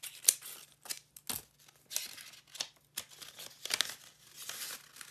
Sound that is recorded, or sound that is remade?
recorded